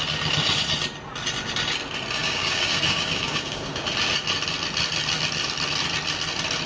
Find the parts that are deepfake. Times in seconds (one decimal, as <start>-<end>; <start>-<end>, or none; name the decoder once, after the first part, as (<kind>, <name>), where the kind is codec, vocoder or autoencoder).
2.2-3.8 (codec, DAC)